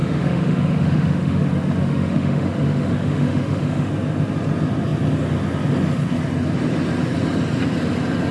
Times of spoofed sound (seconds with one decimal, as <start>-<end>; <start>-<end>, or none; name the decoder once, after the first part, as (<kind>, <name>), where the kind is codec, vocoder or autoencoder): 0.0-1.4 (autoencoder, DAC-VAE); 1.8-3.9